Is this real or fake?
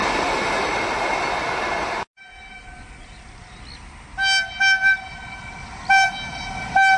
real